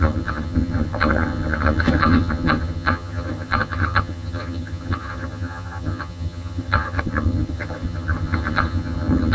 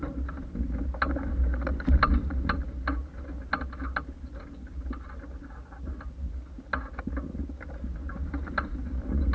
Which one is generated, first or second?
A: first